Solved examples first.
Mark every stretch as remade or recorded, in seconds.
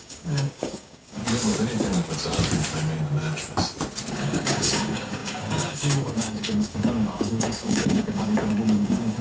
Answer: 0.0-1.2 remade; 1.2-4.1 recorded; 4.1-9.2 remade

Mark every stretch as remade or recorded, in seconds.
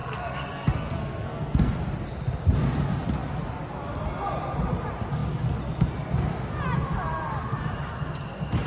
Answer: 0.0-1.7 remade; 1.7-8.7 recorded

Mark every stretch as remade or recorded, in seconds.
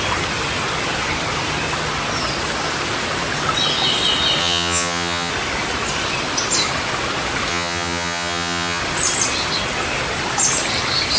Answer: 0.0-4.4 recorded; 4.4-5.3 remade; 5.3-7.5 recorded; 7.5-8.8 remade; 8.8-11.2 recorded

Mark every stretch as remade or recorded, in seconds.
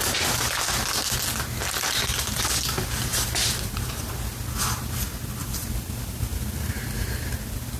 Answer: 0.0-3.1 recorded; 3.1-4.1 remade; 4.1-5.4 recorded; 5.4-7.3 remade; 7.3-7.8 recorded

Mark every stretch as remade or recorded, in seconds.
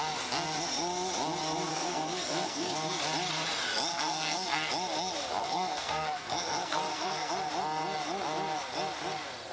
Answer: 0.0-1.7 recorded; 1.7-3.0 remade; 3.0-3.9 recorded; 3.9-4.7 remade; 4.7-5.4 recorded; 5.4-7.3 remade; 7.3-9.5 recorded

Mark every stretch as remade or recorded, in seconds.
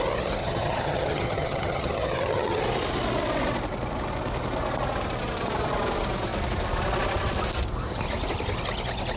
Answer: 0.0-0.4 recorded; 0.4-2.6 remade; 2.6-9.2 recorded